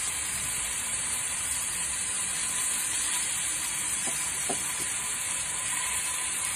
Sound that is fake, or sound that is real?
fake